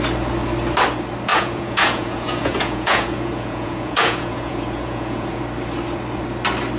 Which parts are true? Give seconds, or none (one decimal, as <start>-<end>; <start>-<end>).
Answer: 0.0-1.3; 5.4-6.8